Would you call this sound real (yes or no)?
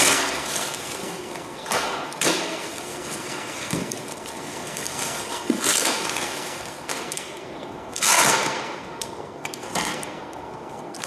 no